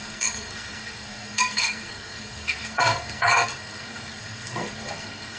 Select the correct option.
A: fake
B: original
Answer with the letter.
A